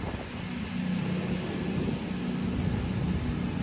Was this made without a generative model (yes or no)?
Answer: yes